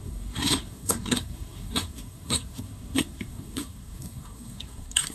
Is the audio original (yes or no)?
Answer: no